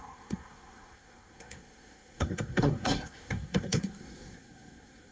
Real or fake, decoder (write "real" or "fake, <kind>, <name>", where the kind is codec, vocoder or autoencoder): fake, codec, SNAC